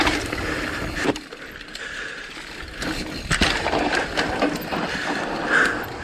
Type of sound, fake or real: real